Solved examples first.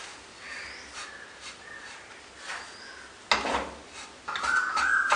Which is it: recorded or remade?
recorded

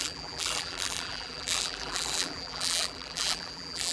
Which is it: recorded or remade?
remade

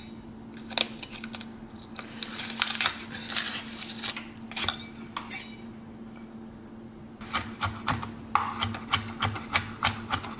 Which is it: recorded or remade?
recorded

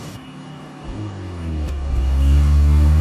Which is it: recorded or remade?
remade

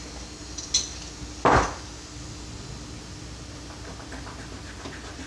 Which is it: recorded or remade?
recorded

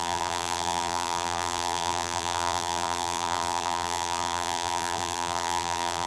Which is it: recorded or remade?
remade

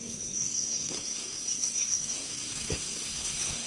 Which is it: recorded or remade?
remade